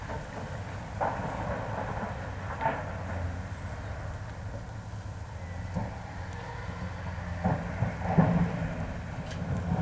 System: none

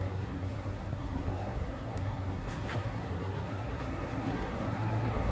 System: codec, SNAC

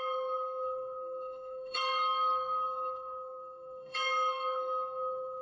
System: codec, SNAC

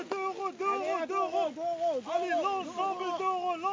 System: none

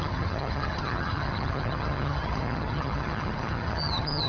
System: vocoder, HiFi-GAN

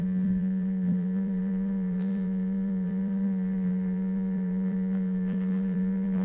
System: vocoder, BigVGAN v2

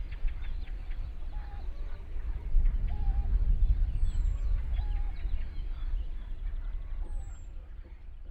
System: vocoder, BigVGAN v2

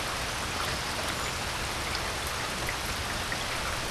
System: none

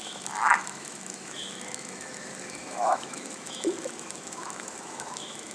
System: autoencoder, DAC-VAE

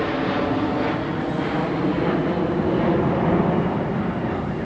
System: none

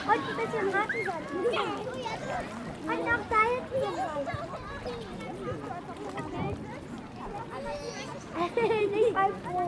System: none